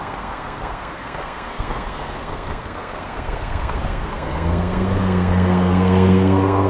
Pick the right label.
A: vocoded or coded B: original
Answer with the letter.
A